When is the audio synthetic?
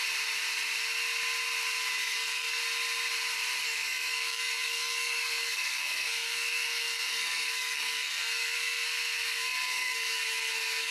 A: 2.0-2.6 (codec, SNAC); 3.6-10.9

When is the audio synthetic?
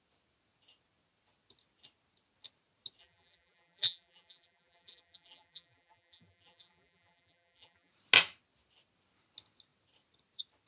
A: 3.0-7.9 (vocoder, BigVGAN v2)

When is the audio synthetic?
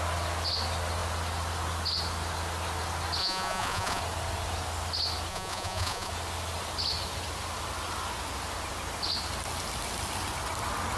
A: 3.2-4.0 (vocoder, Vocos); 5.3-6.1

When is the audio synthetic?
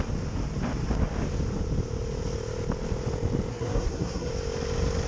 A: 3.5-4.3 (codec, SNAC)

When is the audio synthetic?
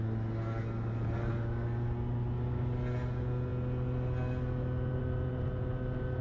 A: none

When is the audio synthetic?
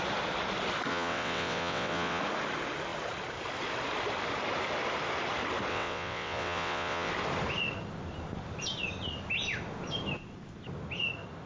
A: 0.9-2.2 (vocoder, WaveNeXt); 5.7-7.1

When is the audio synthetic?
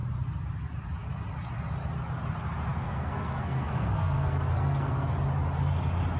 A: 2.7-5.1 (codec, SNAC)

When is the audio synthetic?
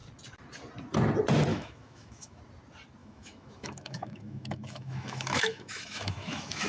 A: 1.5-2.4 (autoencoder, DAC-VAE); 3.0-6.7